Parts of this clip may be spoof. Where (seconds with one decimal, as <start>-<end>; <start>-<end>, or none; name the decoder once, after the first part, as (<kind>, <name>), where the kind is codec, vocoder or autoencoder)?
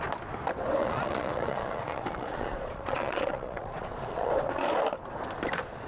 0.8-4.3 (vocoder, Vocos)